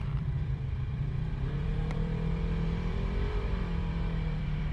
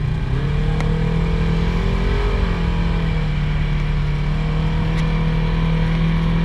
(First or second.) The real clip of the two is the second